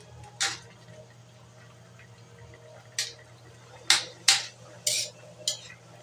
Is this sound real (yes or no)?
yes